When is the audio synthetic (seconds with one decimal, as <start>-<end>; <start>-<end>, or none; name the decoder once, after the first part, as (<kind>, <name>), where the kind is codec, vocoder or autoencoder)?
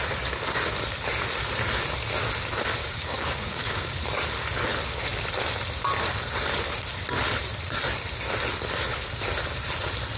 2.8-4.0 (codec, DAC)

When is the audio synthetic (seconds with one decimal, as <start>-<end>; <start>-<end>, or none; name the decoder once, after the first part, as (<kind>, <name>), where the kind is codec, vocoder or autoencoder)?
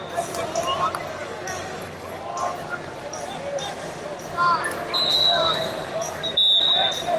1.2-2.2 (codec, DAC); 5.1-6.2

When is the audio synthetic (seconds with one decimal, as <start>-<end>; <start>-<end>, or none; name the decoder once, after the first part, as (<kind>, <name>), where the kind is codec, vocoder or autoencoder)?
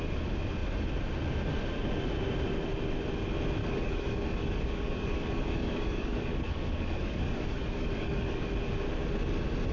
3.6-8.4 (codec, DAC)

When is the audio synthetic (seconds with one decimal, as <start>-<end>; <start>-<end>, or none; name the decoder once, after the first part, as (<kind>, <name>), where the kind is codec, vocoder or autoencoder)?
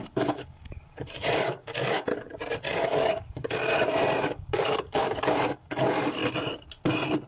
0.0-2.1 (codec, DAC); 2.7-3.6; 4.2-6.2